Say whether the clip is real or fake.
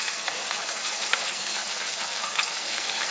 fake